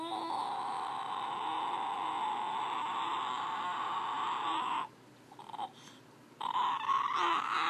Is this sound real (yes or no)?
yes